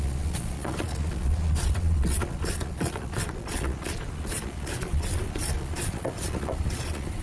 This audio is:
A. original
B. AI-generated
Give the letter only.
B